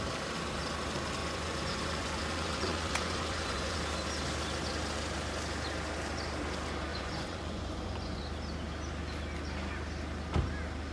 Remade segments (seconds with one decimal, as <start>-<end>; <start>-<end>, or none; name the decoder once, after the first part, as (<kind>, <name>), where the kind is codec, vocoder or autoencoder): 1.2-3.8 (vocoder, Vocos); 6.9-8.2